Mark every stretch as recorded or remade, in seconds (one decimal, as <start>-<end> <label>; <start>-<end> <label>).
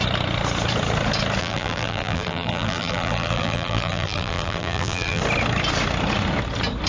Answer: 0.0-1.4 recorded; 1.4-5.2 remade; 5.2-6.9 recorded